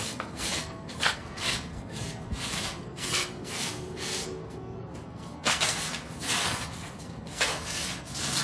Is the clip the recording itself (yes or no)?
no